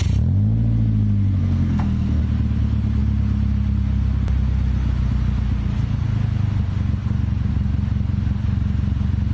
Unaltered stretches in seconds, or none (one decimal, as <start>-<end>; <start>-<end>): 0.0-1.4; 2.2-9.3